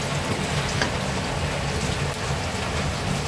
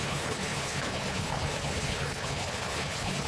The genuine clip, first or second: first